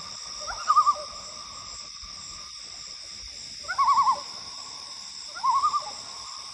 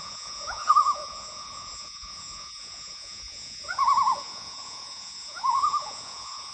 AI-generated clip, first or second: second